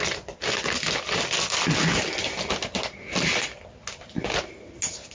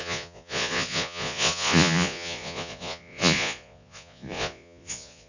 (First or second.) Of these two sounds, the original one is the first